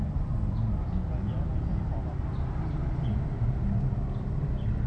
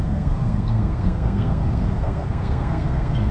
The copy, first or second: second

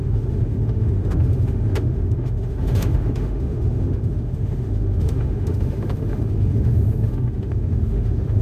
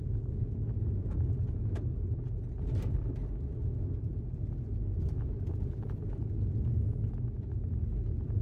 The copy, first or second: first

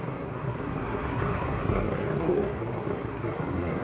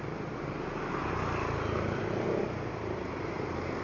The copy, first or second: first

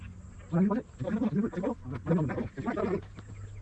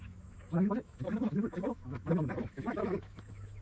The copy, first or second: second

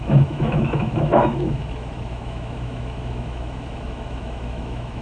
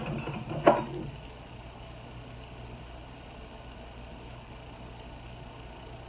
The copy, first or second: first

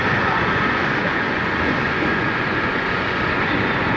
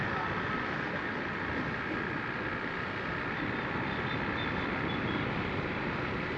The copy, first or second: first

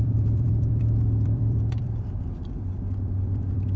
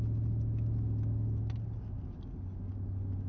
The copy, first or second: first